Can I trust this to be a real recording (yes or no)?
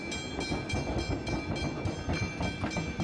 yes